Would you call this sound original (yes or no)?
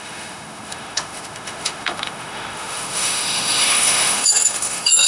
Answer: no